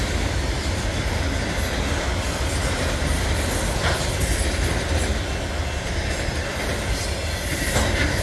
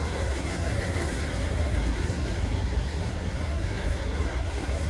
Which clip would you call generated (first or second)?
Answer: second